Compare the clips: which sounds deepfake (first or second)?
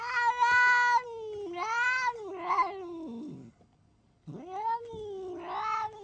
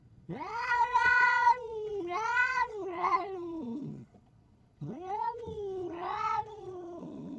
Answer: second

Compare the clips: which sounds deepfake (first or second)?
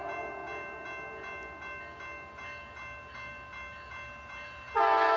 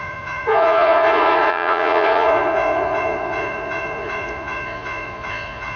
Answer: second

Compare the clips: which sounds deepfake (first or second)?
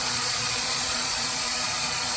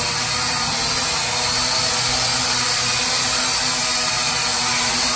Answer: first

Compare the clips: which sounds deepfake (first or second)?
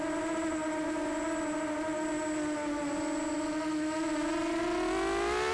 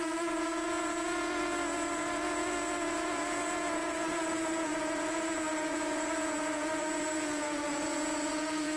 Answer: second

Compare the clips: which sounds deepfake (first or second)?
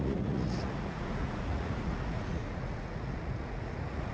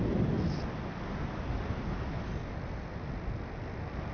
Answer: first